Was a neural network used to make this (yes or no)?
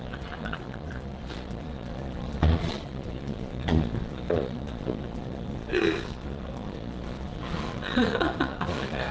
yes